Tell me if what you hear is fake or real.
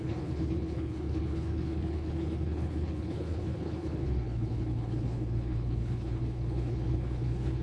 fake